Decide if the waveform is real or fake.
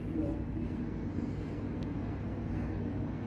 fake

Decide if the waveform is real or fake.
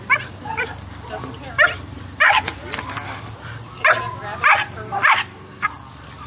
fake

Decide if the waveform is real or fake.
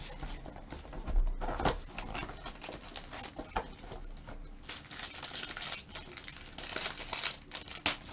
real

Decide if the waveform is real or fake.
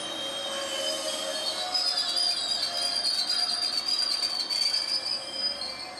real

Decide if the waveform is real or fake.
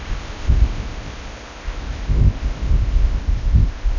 fake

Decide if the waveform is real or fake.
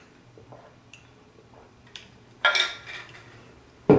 fake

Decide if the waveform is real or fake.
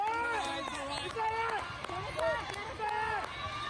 real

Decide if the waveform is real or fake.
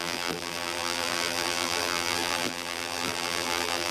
fake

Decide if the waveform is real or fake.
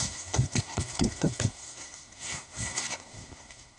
fake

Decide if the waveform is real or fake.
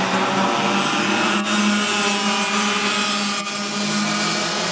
real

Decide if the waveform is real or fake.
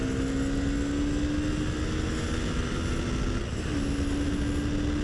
real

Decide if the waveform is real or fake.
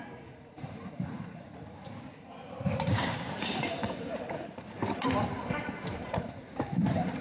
fake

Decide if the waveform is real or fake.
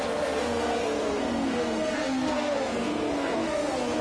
fake